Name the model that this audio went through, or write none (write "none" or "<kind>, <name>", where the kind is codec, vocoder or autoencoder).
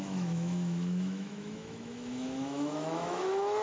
autoencoder, DAC-VAE